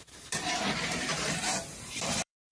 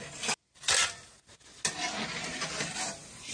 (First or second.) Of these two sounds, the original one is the second